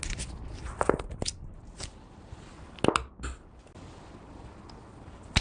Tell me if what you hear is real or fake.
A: real